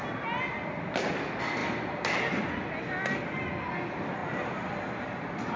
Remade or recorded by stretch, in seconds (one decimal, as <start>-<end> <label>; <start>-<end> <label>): 0.0-5.6 recorded